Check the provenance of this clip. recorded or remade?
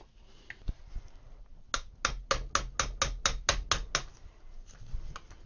recorded